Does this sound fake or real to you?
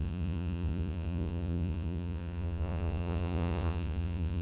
fake